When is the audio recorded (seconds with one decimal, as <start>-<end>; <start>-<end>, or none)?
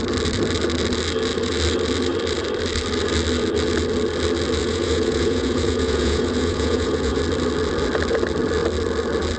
0.0-4.6; 7.2-9.4